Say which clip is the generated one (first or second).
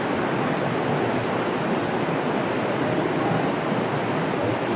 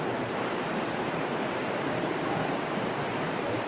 second